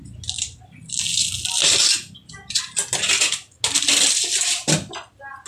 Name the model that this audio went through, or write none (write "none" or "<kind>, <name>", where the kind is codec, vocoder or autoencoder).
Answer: none